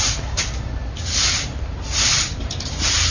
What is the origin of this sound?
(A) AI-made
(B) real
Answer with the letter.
B